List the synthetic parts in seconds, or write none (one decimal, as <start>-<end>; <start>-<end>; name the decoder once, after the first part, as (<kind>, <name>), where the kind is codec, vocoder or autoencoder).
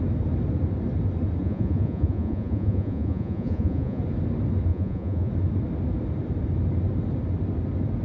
1.4-4.0 (vocoder, Vocos); 4.7-5.3